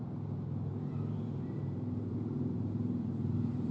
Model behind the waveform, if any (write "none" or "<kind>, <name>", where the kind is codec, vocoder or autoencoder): vocoder, BigVGAN v2